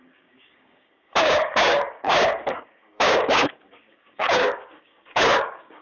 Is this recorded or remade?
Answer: remade